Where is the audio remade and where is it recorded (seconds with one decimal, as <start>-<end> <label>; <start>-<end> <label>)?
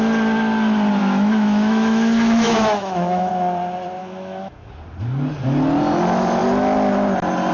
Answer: 0.0-1.0 recorded; 1.0-3.3 remade; 3.3-4.0 recorded; 4.0-4.7 remade; 4.7-7.5 recorded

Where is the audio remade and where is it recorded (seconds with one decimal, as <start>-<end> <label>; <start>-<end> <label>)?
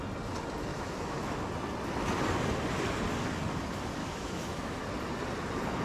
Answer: 0.0-0.7 recorded; 0.7-1.5 remade; 1.5-4.0 recorded; 4.0-4.8 remade; 4.8-5.8 recorded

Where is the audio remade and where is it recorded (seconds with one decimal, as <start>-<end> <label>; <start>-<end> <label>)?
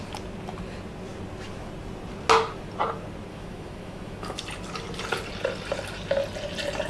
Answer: 0.0-3.3 recorded; 3.3-4.4 remade; 4.4-6.9 recorded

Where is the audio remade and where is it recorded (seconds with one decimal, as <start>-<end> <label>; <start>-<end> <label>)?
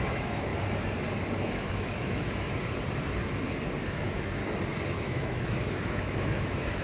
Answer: 0.0-0.5 remade; 0.5-1.4 recorded; 1.4-2.5 remade; 2.5-4.0 recorded; 4.0-4.4 remade; 4.4-5.0 recorded; 5.0-6.8 remade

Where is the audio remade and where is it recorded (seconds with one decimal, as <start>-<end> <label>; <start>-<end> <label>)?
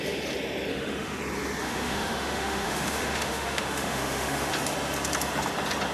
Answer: 0.0-0.7 recorded; 0.7-1.2 remade; 1.2-1.6 recorded; 1.6-4.5 remade; 4.5-5.9 recorded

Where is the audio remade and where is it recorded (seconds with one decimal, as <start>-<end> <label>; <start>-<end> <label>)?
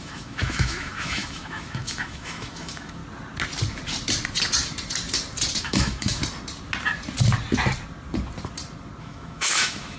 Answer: 0.0-3.0 remade; 3.0-5.6 recorded; 5.6-6.2 remade; 6.2-9.0 recorded; 9.0-10.0 remade